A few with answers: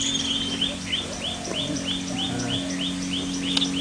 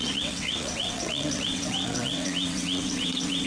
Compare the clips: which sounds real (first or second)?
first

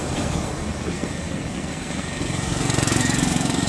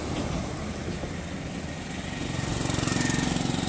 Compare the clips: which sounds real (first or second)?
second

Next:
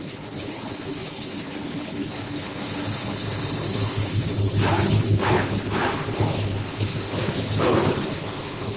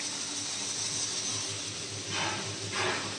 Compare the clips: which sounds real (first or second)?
second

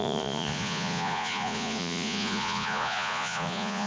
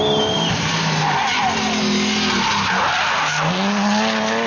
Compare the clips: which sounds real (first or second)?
second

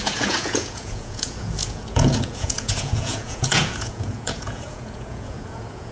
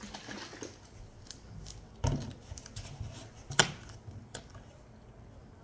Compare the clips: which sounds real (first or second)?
second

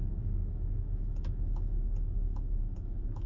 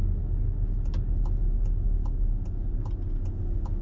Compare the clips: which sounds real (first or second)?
second